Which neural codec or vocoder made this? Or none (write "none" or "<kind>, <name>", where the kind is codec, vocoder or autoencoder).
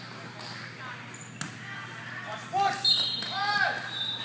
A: none